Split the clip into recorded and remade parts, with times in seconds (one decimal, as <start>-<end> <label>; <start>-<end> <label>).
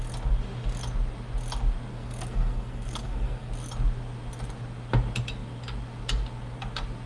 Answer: 0.0-1.9 recorded; 1.9-3.5 remade; 3.5-7.1 recorded